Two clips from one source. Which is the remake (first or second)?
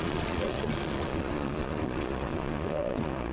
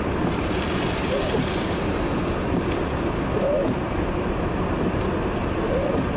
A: first